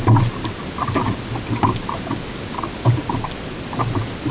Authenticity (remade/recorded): recorded